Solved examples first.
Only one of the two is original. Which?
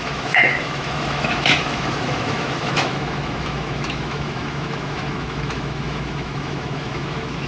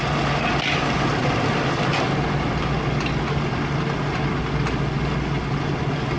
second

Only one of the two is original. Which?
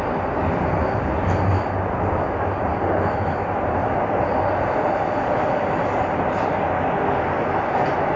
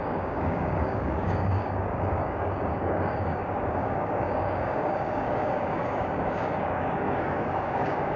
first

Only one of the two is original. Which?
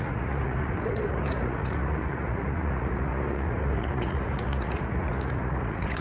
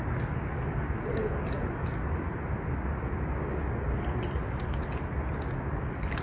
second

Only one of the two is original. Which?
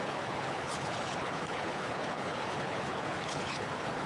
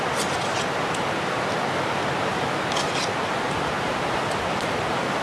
second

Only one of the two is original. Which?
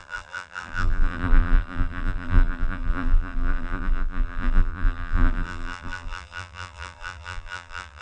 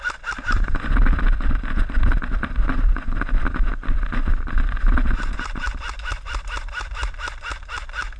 second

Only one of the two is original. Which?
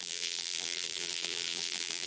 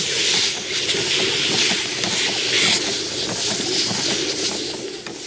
second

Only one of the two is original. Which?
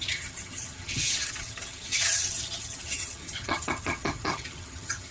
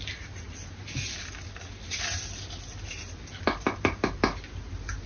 second